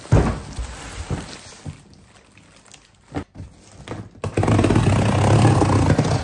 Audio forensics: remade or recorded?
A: recorded